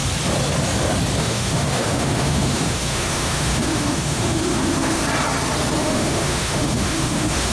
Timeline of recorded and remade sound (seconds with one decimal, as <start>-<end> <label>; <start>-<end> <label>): 0.0-1.2 recorded; 1.2-5.0 remade; 5.0-5.8 recorded; 5.8-7.5 remade